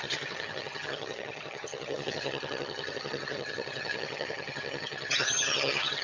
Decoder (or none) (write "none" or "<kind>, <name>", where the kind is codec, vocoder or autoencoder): vocoder, HiFi-GAN